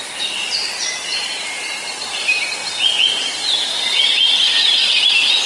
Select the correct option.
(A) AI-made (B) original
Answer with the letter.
B